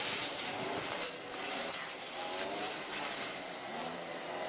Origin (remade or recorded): remade